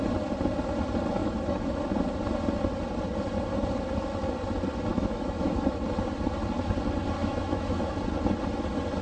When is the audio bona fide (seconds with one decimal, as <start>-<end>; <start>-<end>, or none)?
0.0-1.2; 1.8-4.9; 5.8-7.2; 8.0-9.0